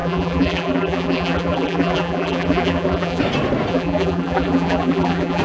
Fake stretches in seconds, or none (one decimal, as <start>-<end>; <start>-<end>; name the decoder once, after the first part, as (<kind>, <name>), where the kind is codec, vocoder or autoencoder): 0.0-3.2 (vocoder, BigVGAN v2); 3.7-5.4